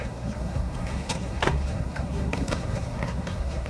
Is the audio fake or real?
fake